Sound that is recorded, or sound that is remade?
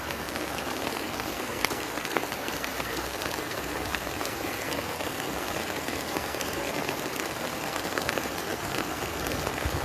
remade